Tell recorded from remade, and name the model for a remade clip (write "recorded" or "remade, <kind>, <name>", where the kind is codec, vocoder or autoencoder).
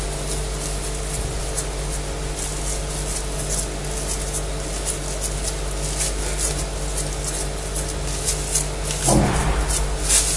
recorded